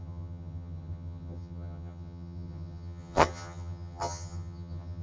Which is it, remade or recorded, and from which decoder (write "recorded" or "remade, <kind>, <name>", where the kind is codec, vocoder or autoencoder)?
remade, vocoder, HiFi-GAN